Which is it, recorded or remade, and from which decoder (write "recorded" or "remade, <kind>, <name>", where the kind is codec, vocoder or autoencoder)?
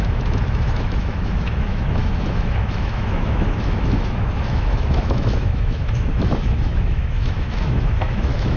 remade, autoencoder, DAC-VAE